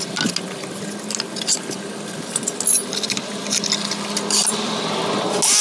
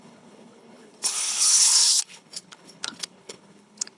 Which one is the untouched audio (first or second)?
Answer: first